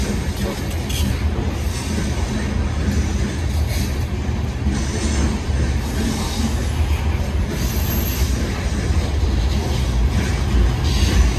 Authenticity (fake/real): real